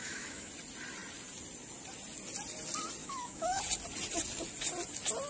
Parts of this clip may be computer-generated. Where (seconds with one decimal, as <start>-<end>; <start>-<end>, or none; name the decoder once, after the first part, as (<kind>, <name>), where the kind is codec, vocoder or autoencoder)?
0.0-0.5 (autoencoder, DAC-VAE); 3.0-3.6